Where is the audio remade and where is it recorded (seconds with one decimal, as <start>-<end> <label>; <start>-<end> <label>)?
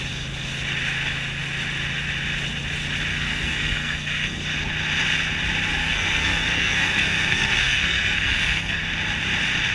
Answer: 0.0-3.1 recorded; 3.1-4.4 remade; 4.4-5.8 recorded; 5.8-8.8 remade; 8.8-9.7 recorded